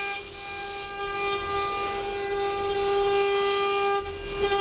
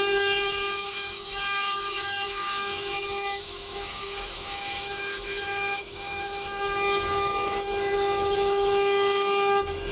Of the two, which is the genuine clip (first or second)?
first